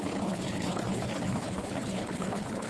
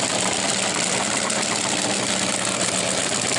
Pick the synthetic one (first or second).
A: first